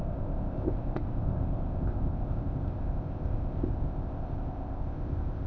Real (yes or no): no